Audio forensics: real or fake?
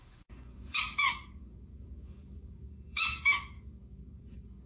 fake